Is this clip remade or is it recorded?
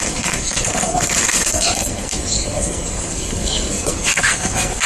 remade